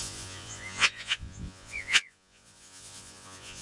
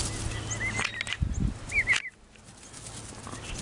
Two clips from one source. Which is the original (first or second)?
second